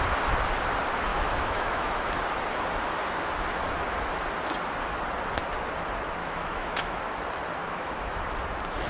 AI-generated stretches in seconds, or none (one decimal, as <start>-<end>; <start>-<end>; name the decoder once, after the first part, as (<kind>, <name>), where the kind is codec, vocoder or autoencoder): 1.1-2.1 (autoencoder, DAC-VAE); 6.2-7.0; 7.6-8.2